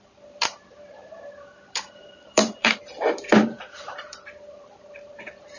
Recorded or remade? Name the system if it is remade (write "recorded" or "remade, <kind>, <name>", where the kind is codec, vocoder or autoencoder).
remade, vocoder, BigVGAN v2